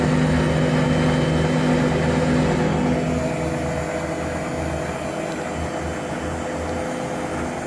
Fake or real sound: real